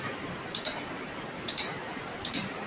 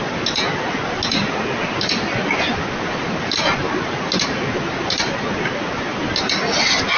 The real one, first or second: second